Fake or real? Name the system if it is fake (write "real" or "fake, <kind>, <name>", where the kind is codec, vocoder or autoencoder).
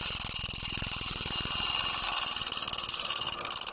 real